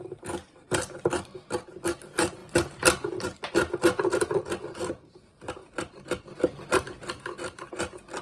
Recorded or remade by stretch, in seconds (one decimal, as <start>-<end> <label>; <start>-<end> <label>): 0.0-8.2 recorded